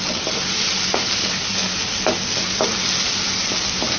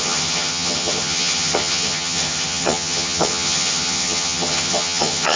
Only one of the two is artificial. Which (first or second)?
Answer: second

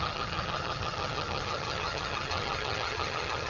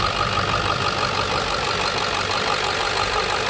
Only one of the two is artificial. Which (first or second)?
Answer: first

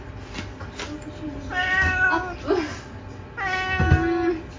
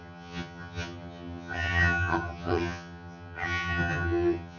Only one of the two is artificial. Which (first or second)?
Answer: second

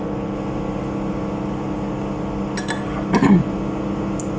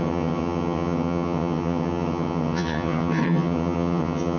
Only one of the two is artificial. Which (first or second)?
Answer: second